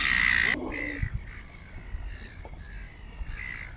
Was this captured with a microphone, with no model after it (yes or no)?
yes